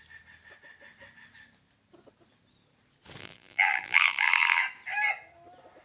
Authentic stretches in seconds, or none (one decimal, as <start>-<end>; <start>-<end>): 0.0-3.2; 4.6-5.8